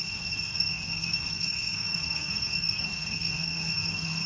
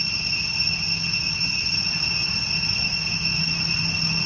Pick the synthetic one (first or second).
first